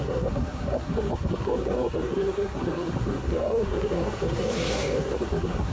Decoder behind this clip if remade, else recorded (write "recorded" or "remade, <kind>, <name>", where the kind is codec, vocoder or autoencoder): remade, codec, SNAC